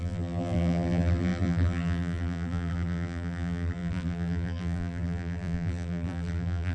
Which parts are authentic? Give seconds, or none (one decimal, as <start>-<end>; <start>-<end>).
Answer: none